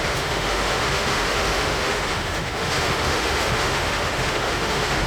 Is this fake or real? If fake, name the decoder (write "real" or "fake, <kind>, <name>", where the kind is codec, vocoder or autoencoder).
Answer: fake, autoencoder, DAC-VAE